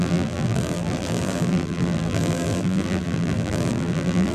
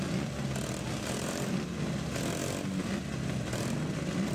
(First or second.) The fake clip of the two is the first